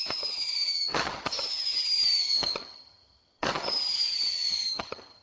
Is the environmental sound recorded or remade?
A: remade